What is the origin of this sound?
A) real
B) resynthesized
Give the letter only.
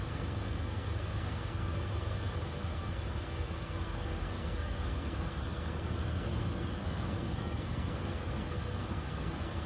B